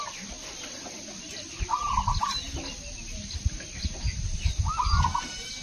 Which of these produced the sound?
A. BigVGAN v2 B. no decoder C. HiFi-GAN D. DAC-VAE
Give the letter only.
B